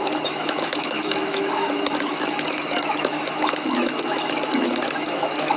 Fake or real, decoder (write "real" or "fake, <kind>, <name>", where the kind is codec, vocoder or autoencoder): fake, autoencoder, DAC-VAE